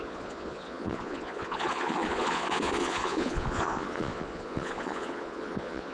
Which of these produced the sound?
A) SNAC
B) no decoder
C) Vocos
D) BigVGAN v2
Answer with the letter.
C